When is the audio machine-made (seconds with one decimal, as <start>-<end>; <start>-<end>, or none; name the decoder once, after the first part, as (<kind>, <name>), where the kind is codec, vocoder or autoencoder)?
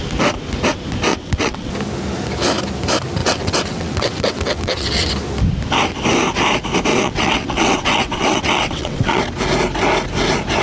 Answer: 1.1-1.7 (vocoder, WaveNeXt); 3.2-5.1; 6.9-9.2